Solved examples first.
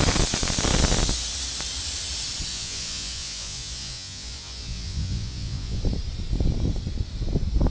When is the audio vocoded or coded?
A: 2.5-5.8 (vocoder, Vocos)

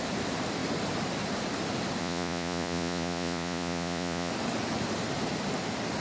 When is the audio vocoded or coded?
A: 2.0-4.3 (vocoder, Vocos)

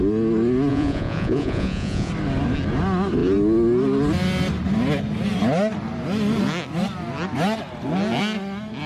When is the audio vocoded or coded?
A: 0.7-2.1 (vocoder, Vocos)

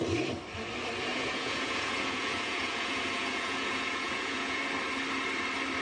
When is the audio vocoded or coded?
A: 1.1-4.6 (vocoder, Vocos)

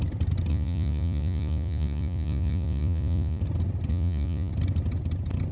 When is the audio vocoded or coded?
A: 0.5-3.4 (vocoder, Vocos); 3.9-4.5

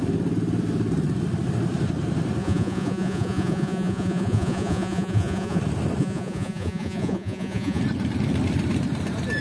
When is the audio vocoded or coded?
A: 2.4-5.6 (vocoder, Vocos); 6.0-7.8

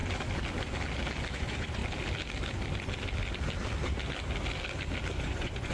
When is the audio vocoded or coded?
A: 1.3-1.8 (vocoder, Vocos); 5.2-5.7

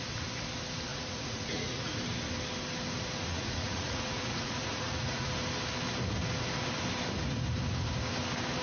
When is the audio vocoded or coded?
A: 0.9-1.9 (vocoder, Vocos); 3.3-5.3